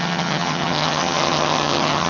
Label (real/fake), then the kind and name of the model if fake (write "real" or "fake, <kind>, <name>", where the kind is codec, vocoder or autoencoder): fake, vocoder, HiFi-GAN